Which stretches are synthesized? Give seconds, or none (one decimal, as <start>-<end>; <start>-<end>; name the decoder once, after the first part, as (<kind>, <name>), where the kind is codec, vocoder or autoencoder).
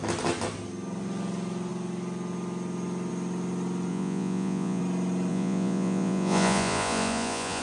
3.9-4.8 (vocoder, Vocos); 5.3-7.6